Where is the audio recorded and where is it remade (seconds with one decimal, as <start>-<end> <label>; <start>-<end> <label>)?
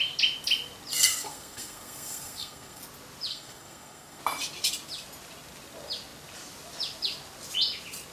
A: 0.0-0.9 recorded; 0.9-2.8 remade; 2.8-3.3 recorded; 3.3-4.2 remade; 4.2-8.1 recorded